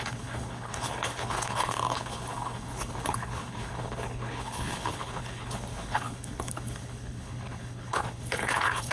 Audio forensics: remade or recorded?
remade